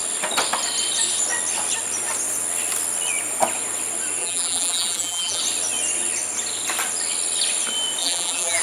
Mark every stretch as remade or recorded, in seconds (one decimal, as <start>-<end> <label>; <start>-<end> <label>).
0.0-4.2 recorded; 4.2-5.4 remade; 5.4-8.0 recorded; 8.0-8.6 remade